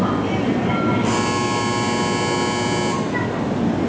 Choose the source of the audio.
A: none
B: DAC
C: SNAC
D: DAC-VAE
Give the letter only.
A